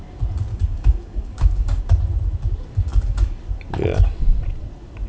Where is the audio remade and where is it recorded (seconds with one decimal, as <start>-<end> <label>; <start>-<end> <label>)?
0.0-0.5 recorded; 0.5-1.8 remade; 1.8-2.9 recorded; 2.9-3.4 remade; 3.4-5.1 recorded

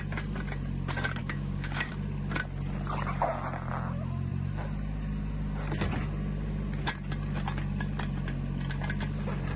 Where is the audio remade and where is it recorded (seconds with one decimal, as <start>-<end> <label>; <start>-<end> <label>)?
0.0-1.2 recorded; 1.2-1.9 remade; 1.9-9.6 recorded